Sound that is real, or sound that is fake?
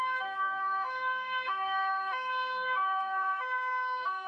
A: fake